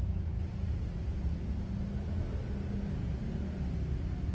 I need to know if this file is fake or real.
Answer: real